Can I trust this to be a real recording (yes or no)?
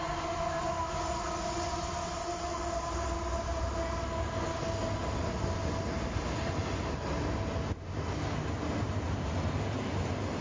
yes